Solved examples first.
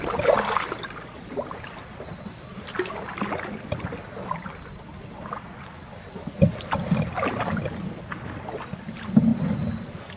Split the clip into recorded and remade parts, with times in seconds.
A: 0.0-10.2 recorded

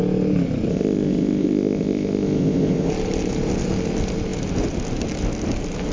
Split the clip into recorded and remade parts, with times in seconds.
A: 0.0-0.7 recorded; 0.7-2.9 remade; 2.9-5.9 recorded

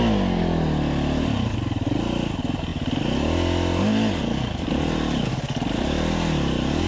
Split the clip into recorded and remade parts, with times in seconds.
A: 0.0-6.9 recorded

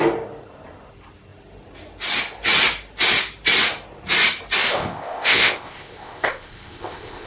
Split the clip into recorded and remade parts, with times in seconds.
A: 0.0-4.7 recorded; 4.7-7.3 remade